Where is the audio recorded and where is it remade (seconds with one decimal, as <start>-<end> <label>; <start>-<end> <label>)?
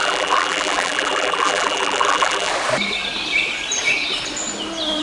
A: 0.0-2.5 remade; 2.5-5.0 recorded